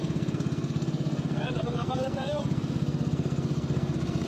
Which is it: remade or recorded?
remade